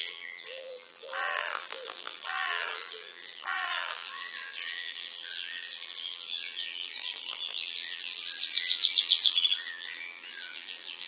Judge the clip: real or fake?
fake